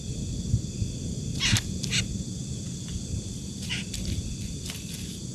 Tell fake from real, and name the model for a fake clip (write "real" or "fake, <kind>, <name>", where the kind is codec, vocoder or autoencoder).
real